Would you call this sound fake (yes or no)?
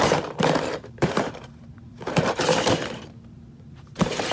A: yes